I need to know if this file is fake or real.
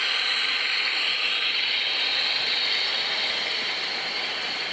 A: real